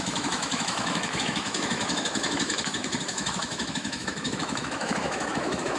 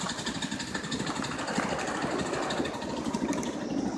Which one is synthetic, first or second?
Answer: first